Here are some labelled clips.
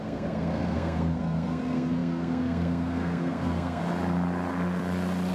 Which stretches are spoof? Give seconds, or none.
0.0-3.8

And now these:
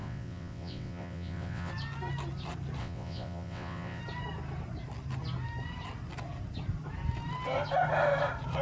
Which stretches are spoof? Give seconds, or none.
0.0-1.7; 2.8-4.0

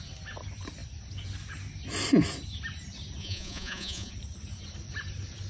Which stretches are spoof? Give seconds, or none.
3.2-4.1

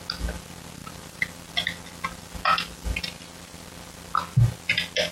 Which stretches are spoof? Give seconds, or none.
none

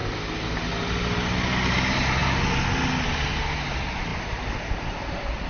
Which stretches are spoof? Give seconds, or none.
none